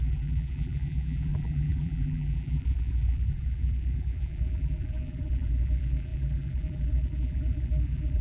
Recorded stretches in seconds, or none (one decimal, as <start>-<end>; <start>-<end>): none